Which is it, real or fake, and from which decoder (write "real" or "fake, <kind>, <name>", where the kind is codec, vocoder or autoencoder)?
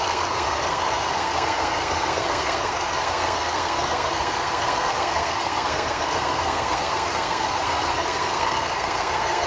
fake, codec, SNAC